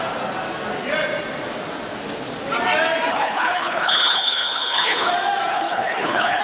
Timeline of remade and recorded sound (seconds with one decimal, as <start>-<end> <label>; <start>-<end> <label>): 0.0-3.1 recorded; 3.1-5.1 remade; 5.1-5.5 recorded; 5.5-6.4 remade